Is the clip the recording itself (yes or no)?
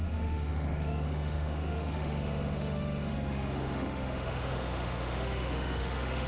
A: no